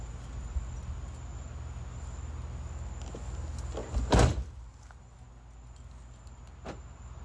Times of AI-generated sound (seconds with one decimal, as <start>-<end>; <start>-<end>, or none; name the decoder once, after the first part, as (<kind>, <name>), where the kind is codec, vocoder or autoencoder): 3.8-4.5 (vocoder, BigVGAN v2)